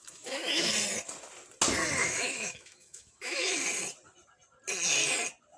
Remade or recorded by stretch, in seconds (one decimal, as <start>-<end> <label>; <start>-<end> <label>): 0.0-0.7 remade; 0.7-2.0 recorded; 2.0-3.6 remade; 3.6-5.6 recorded